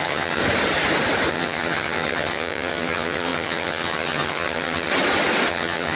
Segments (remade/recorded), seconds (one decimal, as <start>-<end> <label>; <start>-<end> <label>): 0.0-0.4 remade; 0.4-1.3 recorded; 1.3-4.9 remade; 4.9-5.5 recorded; 5.5-6.0 remade